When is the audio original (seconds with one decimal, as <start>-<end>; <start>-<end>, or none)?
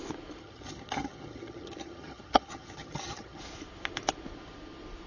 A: 0.0-0.4; 3.4-5.1